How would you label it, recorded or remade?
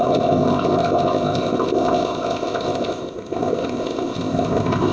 remade